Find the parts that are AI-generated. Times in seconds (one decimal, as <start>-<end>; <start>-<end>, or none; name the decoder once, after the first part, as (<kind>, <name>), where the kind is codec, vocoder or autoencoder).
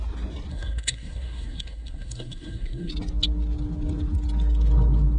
0.5-2.9 (codec, SNAC)